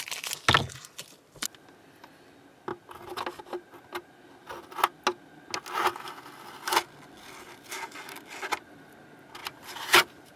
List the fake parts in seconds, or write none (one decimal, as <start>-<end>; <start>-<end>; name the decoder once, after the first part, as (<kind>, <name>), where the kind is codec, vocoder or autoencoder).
9.4-10.4 (vocoder, BigVGAN v2)